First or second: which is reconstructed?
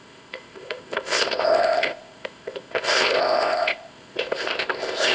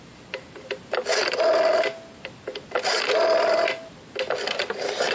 first